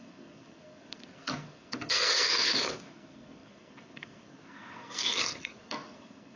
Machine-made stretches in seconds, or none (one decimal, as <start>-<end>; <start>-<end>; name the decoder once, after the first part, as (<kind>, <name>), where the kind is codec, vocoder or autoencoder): 0.0-6.4 (codec, SNAC)